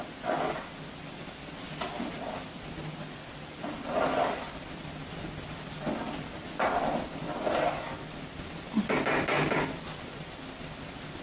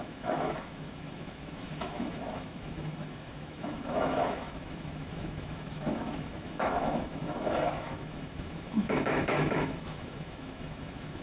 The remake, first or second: second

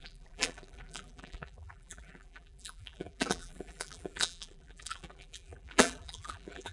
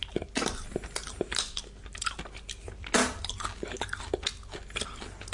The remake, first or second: first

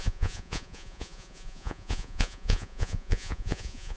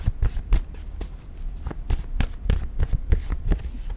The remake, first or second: first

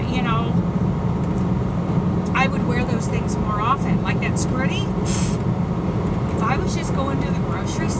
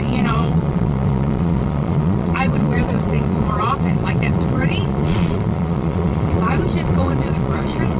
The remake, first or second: second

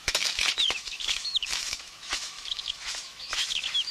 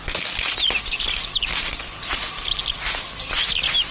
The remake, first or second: first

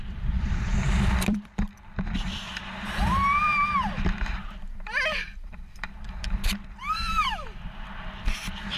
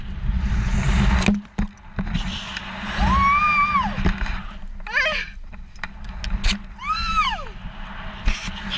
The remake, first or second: first